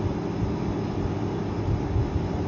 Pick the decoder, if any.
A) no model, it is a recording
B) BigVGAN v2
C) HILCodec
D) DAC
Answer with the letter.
A